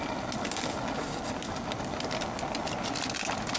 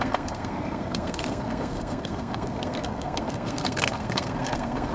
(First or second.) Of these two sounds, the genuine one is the first